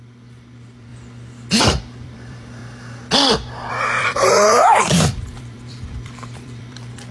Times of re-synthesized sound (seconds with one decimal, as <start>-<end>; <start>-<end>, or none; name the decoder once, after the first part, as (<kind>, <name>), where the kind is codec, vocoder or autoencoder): 0.0-0.9 (vocoder, BigVGAN v2); 1.6-2.6; 3.7-7.1